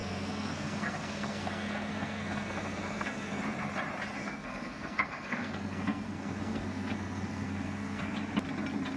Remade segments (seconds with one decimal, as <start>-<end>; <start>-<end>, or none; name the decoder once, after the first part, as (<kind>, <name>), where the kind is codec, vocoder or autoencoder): 0.0-3.4 (codec, SNAC); 4.2-8.1